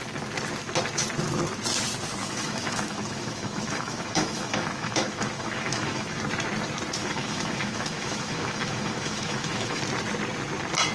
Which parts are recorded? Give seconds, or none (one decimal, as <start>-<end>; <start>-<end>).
0.0-2.2; 6.2-7.0; 9.8-10.9